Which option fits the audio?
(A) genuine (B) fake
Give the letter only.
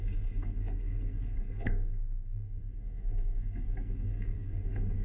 B